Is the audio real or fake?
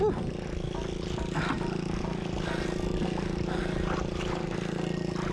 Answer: real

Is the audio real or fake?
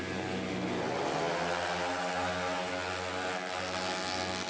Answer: real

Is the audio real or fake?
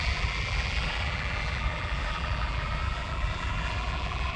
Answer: fake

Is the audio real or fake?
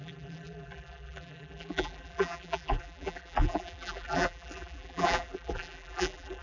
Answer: fake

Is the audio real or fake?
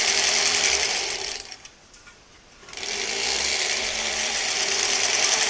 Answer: fake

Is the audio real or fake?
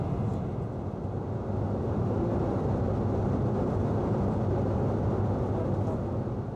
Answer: real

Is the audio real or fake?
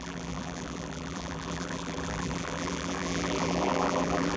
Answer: fake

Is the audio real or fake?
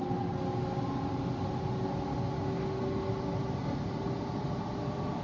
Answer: real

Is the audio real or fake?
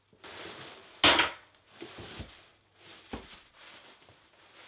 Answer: real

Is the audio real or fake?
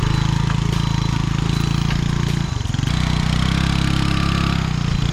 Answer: real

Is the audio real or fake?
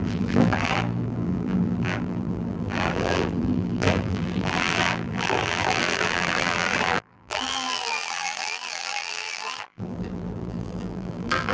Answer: fake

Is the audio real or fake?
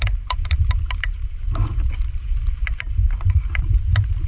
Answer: fake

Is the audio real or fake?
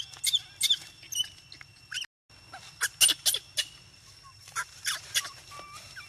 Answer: real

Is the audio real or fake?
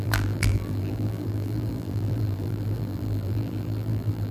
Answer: fake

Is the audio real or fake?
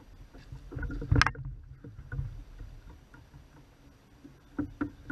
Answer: real